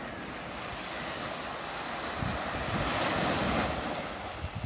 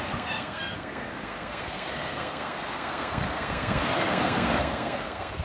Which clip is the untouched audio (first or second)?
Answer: first